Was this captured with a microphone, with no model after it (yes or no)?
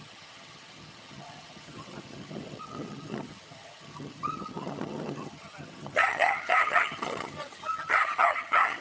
no